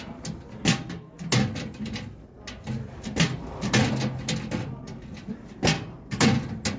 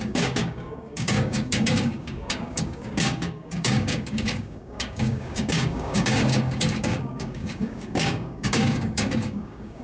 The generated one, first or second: second